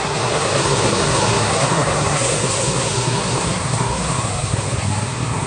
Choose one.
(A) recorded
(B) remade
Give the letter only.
B